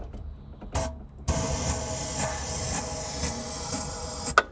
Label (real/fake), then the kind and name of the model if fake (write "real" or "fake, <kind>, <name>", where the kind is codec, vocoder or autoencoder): real